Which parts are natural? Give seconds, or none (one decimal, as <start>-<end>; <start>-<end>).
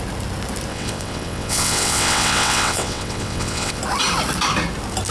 0.0-0.7; 3.8-5.1